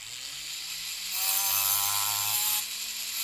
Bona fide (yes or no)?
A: yes